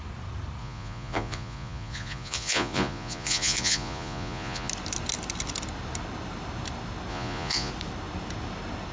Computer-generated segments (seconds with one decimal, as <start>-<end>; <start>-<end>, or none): 0.6-4.7; 7.1-7.7